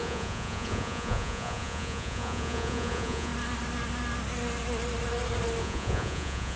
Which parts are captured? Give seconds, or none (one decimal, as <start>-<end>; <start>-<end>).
3.3-5.6